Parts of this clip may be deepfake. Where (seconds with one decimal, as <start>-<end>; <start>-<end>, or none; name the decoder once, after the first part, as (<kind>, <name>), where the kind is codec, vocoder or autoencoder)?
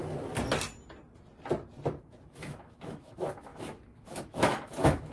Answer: 2.3-5.1 (autoencoder, DAC-VAE)